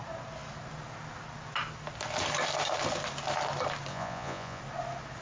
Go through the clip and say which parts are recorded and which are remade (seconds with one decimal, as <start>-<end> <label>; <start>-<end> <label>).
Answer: 0.0-3.9 recorded; 3.9-4.6 remade; 4.6-5.2 recorded